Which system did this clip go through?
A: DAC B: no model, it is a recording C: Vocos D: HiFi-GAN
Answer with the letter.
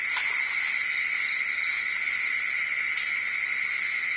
B